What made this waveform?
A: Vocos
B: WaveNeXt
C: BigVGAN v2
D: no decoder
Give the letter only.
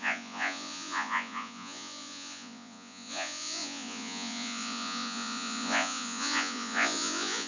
A